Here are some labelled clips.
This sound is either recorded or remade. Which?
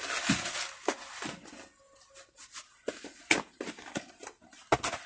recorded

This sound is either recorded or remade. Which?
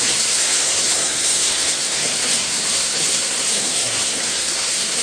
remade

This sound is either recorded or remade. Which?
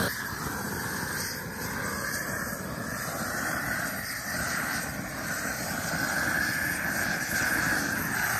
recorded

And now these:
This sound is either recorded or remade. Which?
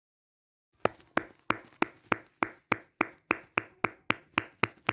recorded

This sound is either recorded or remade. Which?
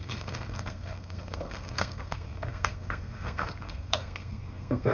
remade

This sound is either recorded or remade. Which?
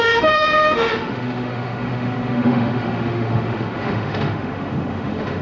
remade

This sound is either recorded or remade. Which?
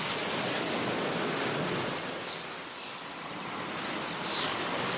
recorded